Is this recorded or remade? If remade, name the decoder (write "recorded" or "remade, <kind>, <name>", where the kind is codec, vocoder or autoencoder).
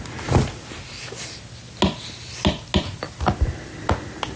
recorded